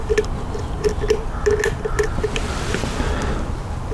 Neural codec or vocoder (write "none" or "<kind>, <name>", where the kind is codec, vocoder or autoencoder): none